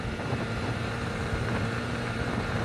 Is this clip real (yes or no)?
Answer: no